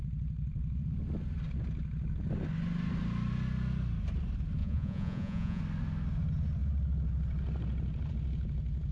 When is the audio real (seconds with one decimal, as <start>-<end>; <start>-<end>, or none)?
0.0-4.6; 5.6-8.9